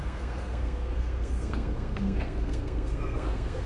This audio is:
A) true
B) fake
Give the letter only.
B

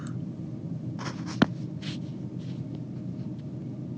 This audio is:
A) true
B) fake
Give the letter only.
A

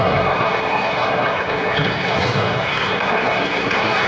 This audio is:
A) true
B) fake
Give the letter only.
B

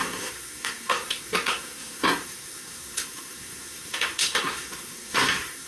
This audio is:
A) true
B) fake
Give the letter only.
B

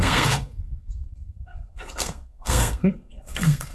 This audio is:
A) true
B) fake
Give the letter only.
B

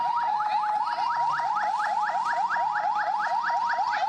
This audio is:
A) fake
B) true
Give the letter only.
B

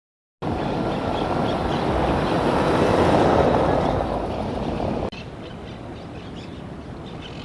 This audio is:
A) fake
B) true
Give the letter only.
B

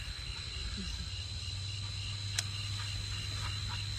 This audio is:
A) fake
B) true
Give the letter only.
B